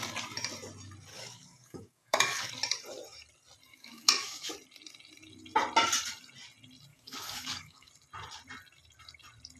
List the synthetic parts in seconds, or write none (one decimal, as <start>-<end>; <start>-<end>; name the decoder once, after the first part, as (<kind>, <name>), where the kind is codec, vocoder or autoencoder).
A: 1.1-2.5 (codec, DAC); 3.7-4.5; 6.9-7.9